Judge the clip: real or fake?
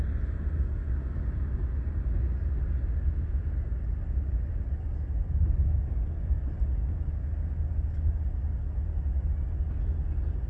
real